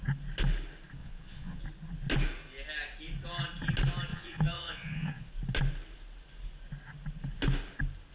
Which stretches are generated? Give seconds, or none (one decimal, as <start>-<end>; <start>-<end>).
1.0-1.6; 4.1-5.3